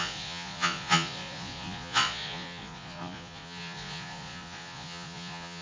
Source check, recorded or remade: remade